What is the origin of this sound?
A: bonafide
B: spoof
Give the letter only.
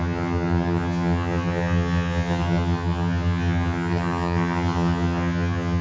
B